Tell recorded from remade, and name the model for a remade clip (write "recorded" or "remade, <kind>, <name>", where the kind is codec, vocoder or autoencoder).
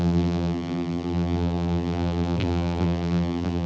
remade, vocoder, BigVGAN v2